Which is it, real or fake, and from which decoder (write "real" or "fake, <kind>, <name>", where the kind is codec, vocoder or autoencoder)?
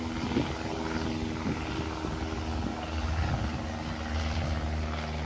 real